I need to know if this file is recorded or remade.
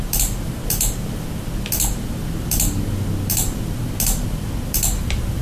recorded